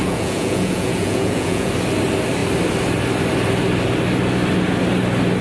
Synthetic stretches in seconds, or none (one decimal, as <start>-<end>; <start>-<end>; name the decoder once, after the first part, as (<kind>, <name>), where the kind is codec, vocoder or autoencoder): 0.0-1.7 (vocoder, Vocos)